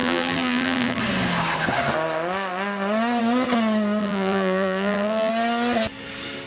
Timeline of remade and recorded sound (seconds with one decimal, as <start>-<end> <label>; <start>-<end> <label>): 0.0-1.0 remade; 1.0-4.0 recorded; 4.0-5.3 remade; 5.3-6.5 recorded